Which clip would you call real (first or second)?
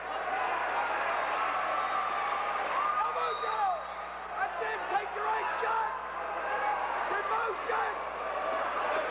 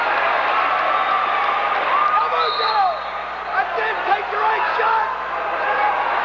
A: first